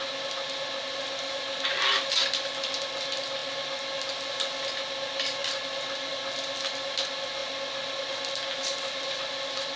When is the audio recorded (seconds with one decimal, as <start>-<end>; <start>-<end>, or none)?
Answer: 0.0-8.6